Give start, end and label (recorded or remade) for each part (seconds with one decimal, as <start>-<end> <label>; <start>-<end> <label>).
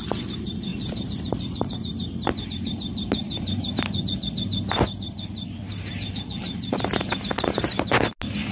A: 0.0-0.7 recorded; 0.7-2.5 remade; 2.5-3.2 recorded; 3.2-3.7 remade; 3.7-8.5 recorded